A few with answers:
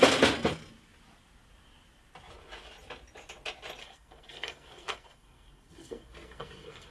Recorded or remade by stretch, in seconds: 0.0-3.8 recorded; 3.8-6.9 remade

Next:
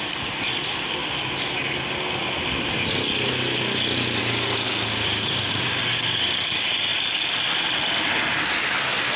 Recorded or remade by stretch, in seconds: 0.0-9.2 recorded

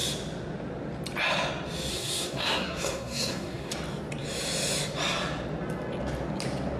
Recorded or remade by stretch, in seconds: 0.0-1.9 recorded; 1.9-3.7 remade; 3.7-6.8 recorded

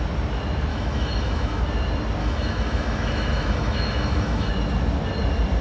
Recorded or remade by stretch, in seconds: 0.0-0.7 recorded; 0.7-1.6 remade; 1.6-2.2 recorded; 2.2-4.5 remade; 4.5-5.6 recorded